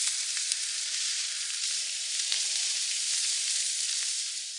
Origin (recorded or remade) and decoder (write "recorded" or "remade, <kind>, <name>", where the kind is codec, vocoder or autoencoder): remade, vocoder, BigVGAN v2